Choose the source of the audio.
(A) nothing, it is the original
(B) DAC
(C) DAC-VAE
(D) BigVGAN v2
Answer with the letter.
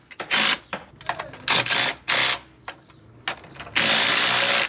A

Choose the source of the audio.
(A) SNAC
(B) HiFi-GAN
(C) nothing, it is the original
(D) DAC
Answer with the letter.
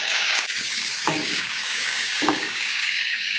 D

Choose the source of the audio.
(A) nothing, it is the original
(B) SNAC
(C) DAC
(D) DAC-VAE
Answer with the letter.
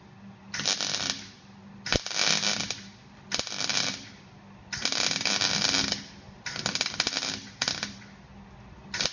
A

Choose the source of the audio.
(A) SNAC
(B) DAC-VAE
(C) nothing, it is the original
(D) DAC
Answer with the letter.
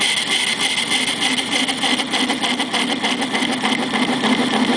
C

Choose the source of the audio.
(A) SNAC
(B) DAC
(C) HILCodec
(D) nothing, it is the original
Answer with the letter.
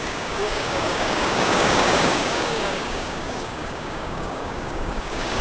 B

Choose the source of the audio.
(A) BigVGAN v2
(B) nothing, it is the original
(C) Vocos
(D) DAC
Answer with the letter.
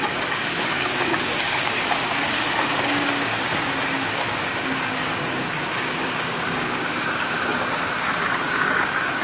D